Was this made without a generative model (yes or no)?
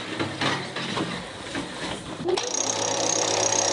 yes